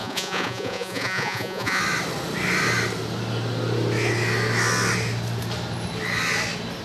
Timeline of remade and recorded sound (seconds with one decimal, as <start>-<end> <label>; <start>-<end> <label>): 0.0-1.8 remade; 1.8-6.8 recorded